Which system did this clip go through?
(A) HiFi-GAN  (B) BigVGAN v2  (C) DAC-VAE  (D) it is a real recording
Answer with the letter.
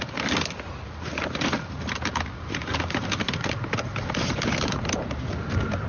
D